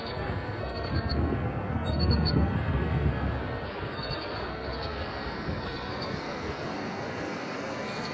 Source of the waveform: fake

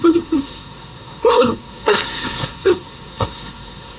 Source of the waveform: fake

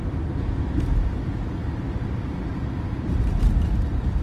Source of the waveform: real